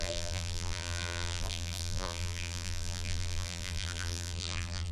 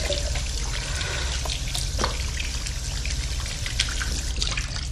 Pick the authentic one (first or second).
second